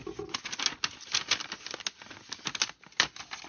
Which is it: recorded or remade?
recorded